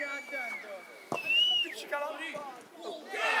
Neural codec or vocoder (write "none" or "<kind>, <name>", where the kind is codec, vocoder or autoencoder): none